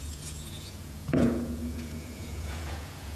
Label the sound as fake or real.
fake